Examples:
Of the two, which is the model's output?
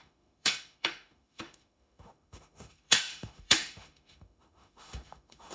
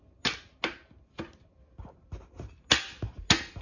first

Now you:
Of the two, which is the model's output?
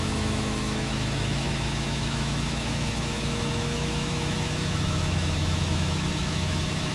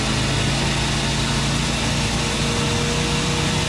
first